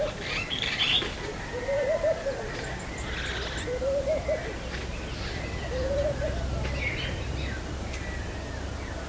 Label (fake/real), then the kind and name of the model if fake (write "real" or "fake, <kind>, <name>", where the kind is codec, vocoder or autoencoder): real